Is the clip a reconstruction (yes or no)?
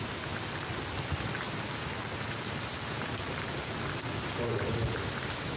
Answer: no